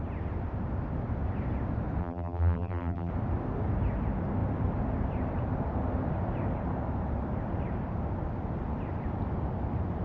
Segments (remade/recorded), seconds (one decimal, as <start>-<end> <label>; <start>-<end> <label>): 0.0-2.0 recorded; 2.0-3.1 remade; 3.1-10.0 recorded